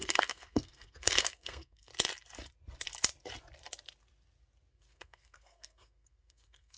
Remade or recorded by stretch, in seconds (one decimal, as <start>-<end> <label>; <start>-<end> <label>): 0.0-1.9 remade; 1.9-4.7 recorded; 4.7-6.8 remade